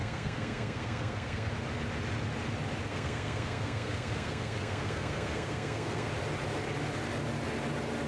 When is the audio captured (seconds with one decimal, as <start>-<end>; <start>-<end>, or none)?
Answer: 1.5-2.9; 6.1-8.1